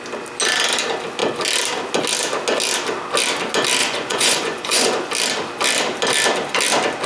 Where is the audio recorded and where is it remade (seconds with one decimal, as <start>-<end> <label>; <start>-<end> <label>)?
0.0-3.8 recorded; 3.8-5.1 remade; 5.1-7.1 recorded